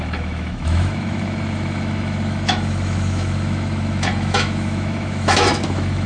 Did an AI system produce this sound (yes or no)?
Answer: yes